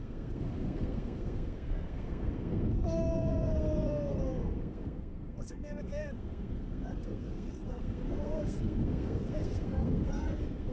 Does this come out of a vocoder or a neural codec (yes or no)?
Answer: yes